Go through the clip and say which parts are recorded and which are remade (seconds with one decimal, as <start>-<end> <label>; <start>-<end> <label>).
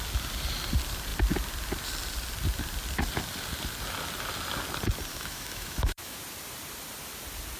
0.0-5.1 recorded; 5.1-6.2 remade; 6.2-7.6 recorded